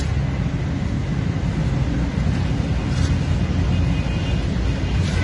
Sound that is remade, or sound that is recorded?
recorded